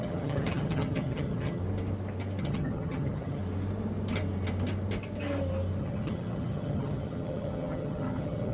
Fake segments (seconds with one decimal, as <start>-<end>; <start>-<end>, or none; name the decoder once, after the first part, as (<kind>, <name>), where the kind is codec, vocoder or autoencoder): 0.0-1.6 (vocoder, HiFi-GAN); 2.4-3.4; 5.8-8.5